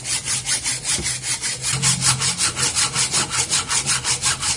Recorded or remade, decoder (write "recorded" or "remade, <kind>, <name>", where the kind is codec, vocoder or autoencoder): recorded